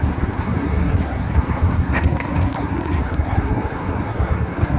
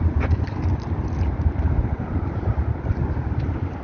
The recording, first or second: second